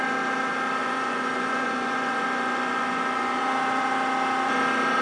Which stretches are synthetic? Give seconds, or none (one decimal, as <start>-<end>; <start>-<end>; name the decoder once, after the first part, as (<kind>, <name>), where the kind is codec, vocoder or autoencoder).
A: 0.8-3.4 (vocoder, Vocos)